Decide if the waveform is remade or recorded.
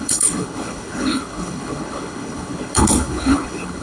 remade